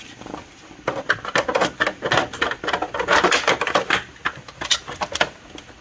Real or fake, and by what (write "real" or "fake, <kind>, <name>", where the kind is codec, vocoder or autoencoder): real